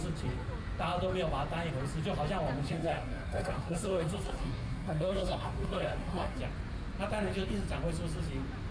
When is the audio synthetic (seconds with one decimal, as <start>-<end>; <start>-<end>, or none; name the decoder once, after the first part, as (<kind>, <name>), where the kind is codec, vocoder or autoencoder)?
2.6-6.4 (codec, SNAC)